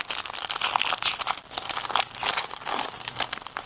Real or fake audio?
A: real